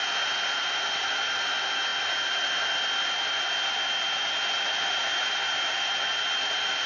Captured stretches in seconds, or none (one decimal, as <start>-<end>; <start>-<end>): 0.0-6.9